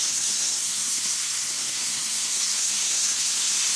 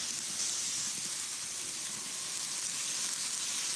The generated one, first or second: first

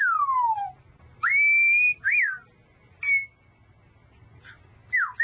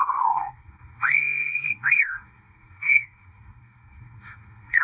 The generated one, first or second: second